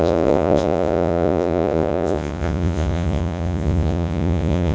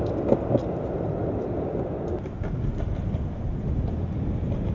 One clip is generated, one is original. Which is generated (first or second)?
first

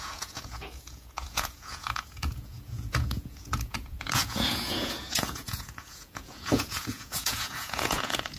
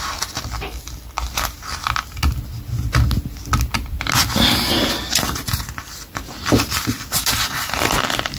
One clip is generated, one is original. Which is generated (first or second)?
first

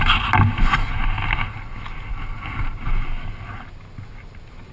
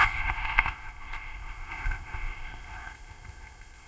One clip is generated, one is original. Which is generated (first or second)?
second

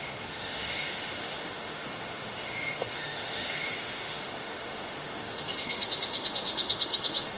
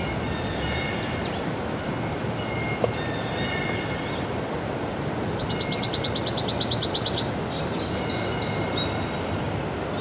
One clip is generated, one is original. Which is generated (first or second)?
first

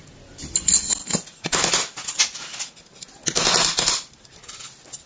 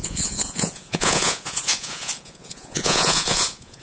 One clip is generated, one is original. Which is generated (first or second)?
second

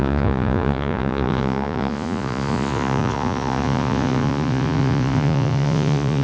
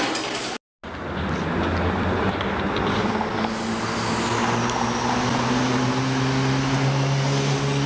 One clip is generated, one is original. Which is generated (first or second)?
first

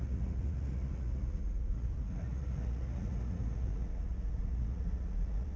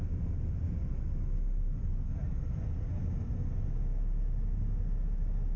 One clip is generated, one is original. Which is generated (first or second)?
first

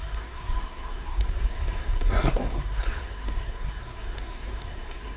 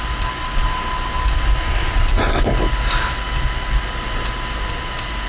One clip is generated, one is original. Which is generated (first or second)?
first